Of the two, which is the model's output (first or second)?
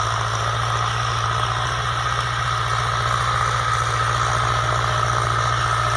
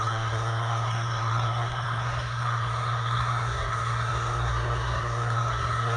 second